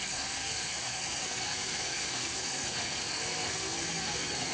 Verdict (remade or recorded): remade